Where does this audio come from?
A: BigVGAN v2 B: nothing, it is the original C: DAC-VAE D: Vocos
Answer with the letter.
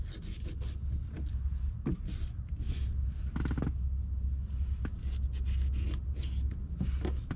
B